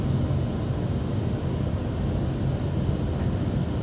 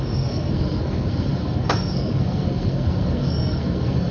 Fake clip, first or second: second